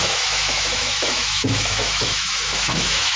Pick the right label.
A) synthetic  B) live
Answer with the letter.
A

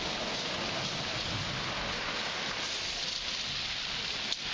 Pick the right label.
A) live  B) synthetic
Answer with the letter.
A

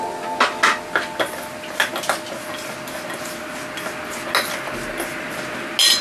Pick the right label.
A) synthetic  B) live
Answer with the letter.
B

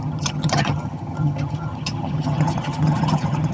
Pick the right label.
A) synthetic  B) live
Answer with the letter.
A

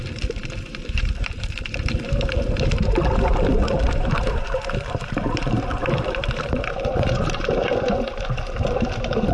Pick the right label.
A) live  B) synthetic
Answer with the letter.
B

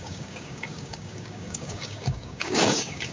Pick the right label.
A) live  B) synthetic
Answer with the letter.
B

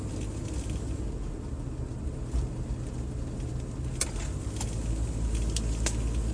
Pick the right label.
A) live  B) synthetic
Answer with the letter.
A